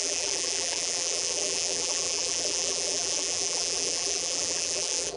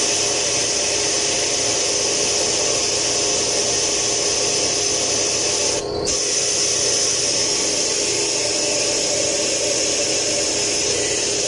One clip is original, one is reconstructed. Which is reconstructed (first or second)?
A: first